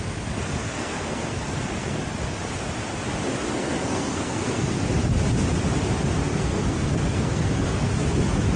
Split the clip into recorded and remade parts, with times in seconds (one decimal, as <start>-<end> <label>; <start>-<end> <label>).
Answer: 0.0-0.6 recorded; 0.6-2.0 remade; 2.0-3.5 recorded; 3.5-4.8 remade; 4.8-6.3 recorded; 6.3-7.9 remade; 7.9-8.6 recorded